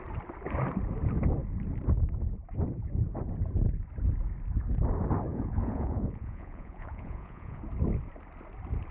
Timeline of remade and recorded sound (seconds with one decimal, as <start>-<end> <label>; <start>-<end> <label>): 0.0-5.3 recorded; 5.3-7.6 remade; 7.6-8.9 recorded